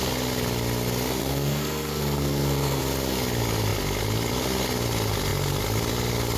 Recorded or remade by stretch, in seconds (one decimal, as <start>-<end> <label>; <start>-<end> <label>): 0.0-1.2 recorded; 1.2-2.8 remade; 2.8-6.4 recorded